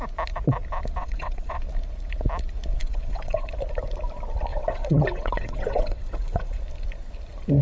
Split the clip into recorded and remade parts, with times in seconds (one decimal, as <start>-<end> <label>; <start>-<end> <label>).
0.0-1.0 recorded; 1.0-1.6 remade; 1.6-2.8 recorded; 2.8-3.5 remade; 3.5-4.5 recorded; 4.5-6.6 remade; 6.6-7.6 recorded